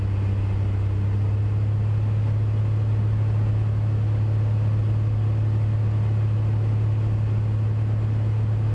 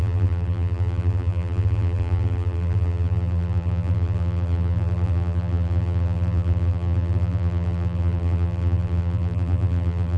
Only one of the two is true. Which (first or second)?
first